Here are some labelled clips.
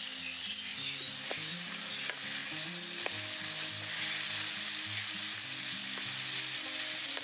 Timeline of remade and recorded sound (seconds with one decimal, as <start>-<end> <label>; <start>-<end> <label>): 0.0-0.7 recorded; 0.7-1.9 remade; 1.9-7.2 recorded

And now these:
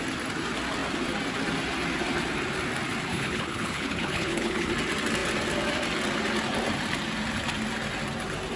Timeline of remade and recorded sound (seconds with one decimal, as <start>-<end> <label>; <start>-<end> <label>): 0.0-3.1 recorded; 3.1-4.7 remade; 4.7-8.6 recorded

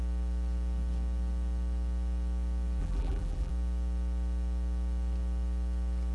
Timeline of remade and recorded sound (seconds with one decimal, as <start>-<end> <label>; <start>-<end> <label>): 0.0-2.8 recorded; 2.8-3.5 remade; 3.5-6.1 recorded